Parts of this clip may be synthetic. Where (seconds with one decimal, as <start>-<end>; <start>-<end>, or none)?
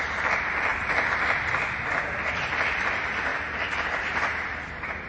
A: none